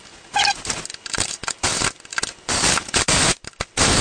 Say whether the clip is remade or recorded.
recorded